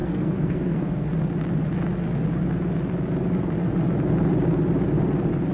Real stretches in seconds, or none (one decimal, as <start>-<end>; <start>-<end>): 1.1-5.5